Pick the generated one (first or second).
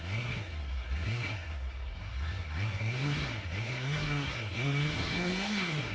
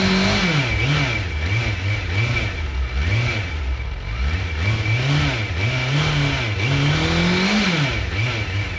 first